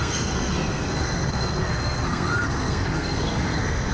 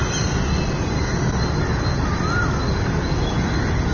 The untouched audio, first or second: second